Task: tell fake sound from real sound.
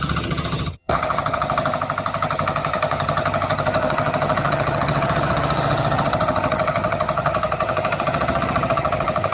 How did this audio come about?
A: fake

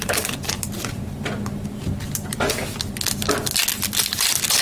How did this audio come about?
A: real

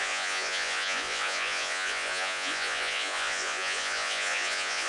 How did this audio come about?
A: fake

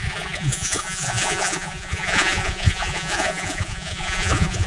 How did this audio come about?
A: fake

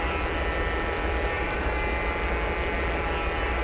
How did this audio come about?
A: real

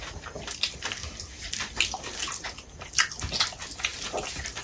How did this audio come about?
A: real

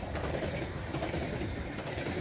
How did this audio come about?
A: fake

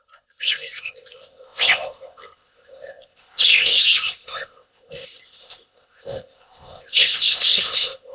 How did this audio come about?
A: fake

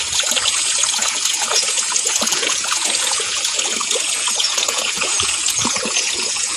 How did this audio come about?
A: fake